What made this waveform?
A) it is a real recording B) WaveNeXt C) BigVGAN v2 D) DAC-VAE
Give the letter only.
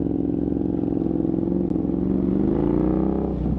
A